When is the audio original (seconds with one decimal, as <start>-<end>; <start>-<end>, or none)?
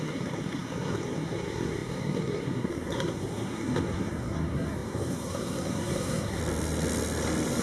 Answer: 6.4-7.6